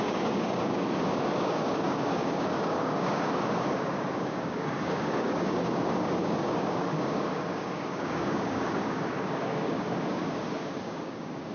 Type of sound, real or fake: fake